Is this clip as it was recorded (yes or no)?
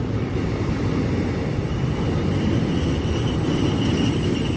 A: yes